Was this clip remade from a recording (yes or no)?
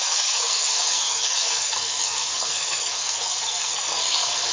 yes